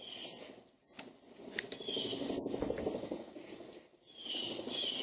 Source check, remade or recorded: recorded